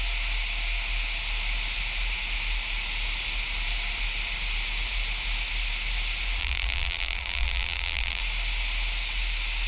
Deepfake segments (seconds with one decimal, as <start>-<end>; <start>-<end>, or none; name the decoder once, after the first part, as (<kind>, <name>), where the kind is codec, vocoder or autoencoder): 6.4-8.2 (vocoder, BigVGAN v2)

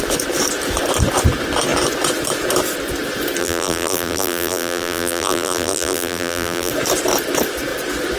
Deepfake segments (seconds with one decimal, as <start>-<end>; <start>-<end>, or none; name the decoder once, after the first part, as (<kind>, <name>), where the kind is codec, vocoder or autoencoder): 3.4-6.7 (vocoder, BigVGAN v2)

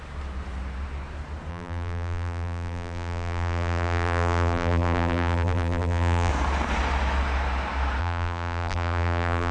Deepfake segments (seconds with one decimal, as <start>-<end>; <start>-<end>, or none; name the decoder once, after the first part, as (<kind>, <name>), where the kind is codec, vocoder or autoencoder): 1.5-6.3 (vocoder, BigVGAN v2); 8.0-9.5

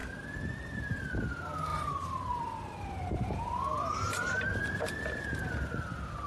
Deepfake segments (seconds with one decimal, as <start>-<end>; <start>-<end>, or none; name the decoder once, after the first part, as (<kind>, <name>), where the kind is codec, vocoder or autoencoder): 0.0-1.1 (vocoder, BigVGAN v2); 1.7-5.5

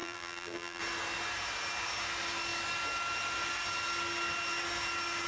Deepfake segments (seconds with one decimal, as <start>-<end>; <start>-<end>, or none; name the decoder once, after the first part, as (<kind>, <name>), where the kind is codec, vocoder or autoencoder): 0.0-0.8 (vocoder, BigVGAN v2)

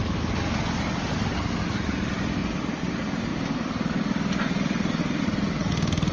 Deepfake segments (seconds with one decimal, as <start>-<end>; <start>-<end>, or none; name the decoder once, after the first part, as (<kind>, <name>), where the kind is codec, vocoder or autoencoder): none

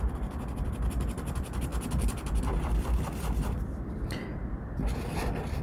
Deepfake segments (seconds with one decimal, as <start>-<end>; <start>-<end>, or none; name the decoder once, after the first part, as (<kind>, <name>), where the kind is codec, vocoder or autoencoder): 0.0-5.6 (vocoder, BigVGAN v2)

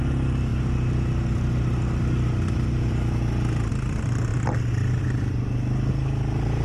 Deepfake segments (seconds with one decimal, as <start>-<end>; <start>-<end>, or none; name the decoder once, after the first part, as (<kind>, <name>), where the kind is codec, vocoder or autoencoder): 4.3-5.0 (vocoder, BigVGAN v2)